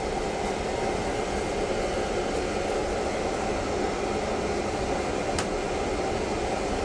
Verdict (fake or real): real